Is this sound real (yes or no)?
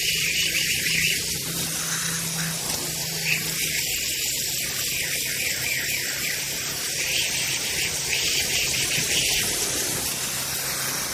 yes